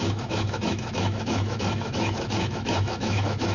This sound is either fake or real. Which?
fake